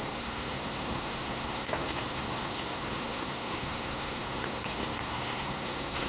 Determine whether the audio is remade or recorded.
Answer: remade